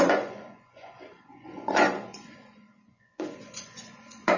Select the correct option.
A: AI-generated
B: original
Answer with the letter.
A